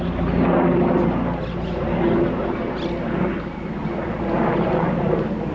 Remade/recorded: recorded